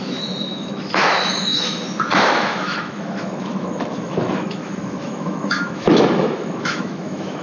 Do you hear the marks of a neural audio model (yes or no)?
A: yes